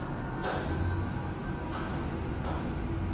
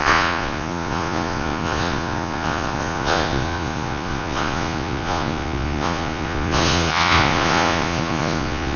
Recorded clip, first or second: first